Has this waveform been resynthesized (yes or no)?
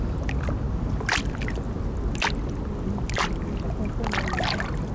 no